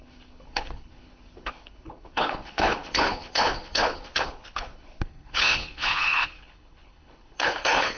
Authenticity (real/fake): fake